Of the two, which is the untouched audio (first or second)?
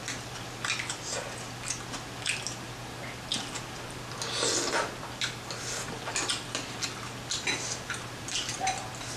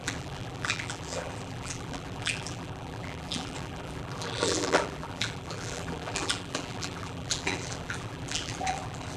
first